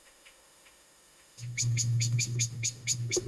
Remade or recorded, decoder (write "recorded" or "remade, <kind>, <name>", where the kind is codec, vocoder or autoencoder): remade, autoencoder, DAC-VAE